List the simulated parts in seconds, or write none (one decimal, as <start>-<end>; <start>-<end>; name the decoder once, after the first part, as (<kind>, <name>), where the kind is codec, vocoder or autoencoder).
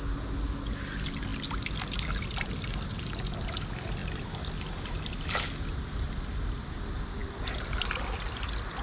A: none